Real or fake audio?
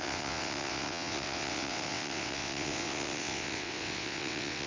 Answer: fake